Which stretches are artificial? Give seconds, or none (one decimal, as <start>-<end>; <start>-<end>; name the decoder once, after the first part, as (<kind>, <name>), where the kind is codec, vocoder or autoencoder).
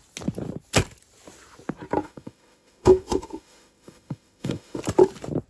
2.0-4.8 (autoencoder, DAC-VAE)